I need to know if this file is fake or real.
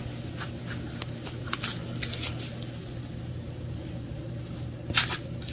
real